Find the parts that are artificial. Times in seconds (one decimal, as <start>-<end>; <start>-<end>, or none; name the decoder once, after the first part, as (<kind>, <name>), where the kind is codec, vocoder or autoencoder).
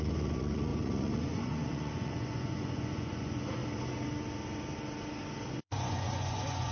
0.0-3.6 (vocoder, Vocos); 5.5-6.7